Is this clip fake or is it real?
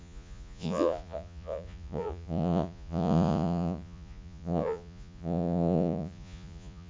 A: fake